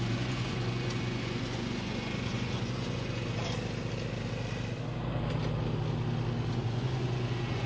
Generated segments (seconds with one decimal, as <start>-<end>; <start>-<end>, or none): 0.0-3.2; 6.5-7.7